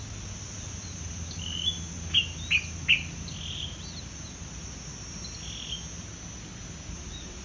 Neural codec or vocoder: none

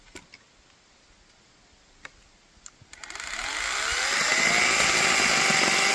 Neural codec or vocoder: none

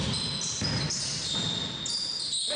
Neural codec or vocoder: none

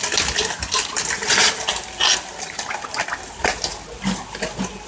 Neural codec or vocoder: none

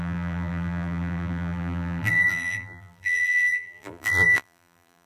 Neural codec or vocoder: vocoder, BigVGAN v2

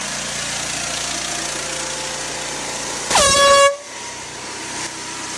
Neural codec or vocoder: none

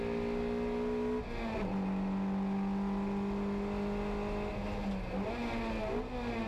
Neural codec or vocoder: none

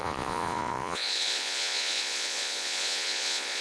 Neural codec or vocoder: vocoder, Vocos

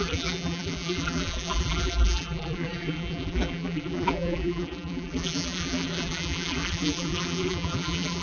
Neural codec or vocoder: vocoder, BigVGAN v2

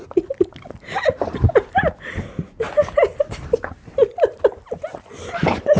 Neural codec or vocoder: none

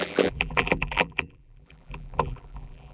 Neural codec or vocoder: vocoder, BigVGAN v2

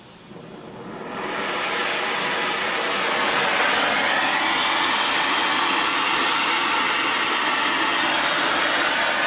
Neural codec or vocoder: none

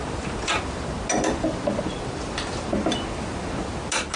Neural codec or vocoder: none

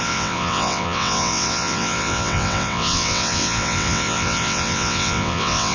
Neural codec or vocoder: vocoder, WaveNeXt